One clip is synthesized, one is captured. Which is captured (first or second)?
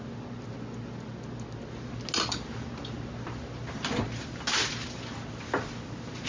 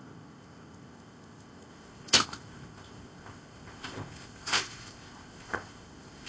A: first